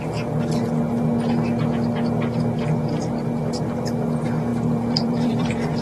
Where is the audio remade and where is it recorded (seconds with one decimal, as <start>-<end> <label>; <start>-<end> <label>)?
0.0-4.5 recorded; 4.5-5.8 remade